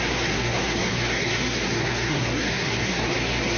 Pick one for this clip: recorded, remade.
remade